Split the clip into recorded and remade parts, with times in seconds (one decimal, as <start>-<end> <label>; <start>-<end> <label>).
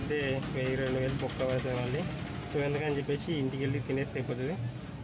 0.0-5.0 recorded